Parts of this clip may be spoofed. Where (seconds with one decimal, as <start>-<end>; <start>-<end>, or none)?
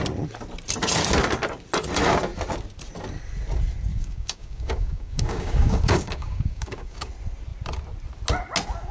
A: 3.9-7.1